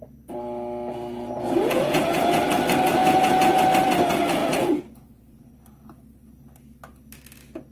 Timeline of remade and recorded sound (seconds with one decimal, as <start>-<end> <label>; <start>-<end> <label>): 0.0-1.6 recorded; 1.6-2.4 remade; 2.4-3.0 recorded; 3.0-3.6 remade; 3.6-4.4 recorded; 4.4-5.5 remade; 5.5-7.7 recorded

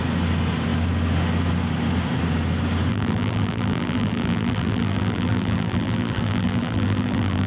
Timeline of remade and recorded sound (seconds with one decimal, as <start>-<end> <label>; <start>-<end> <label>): 0.0-2.9 recorded; 2.9-7.5 remade

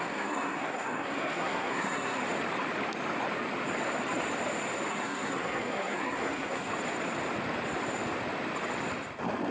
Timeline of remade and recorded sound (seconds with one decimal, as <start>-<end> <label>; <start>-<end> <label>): 0.0-2.2 remade; 2.2-4.9 recorded; 4.9-6.7 remade; 6.7-9.5 recorded

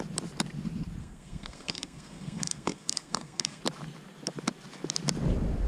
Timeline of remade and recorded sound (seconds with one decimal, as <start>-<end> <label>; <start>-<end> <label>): 0.0-1.0 recorded; 1.0-3.6 remade; 3.6-5.7 recorded

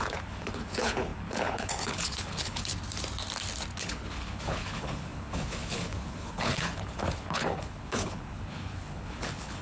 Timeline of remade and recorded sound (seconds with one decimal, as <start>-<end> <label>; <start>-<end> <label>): 0.0-2.7 remade; 2.7-3.8 recorded; 3.8-9.6 remade

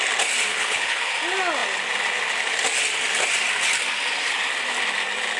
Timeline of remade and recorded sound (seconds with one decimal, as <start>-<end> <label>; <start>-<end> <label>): 0.0-0.5 recorded; 0.5-1.1 remade; 1.1-5.4 recorded

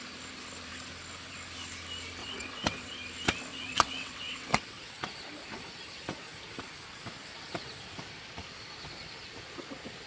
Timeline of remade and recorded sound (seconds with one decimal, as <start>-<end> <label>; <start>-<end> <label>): 0.0-2.2 recorded; 2.2-2.9 remade; 2.9-3.5 recorded; 3.5-5.0 remade; 5.0-10.1 recorded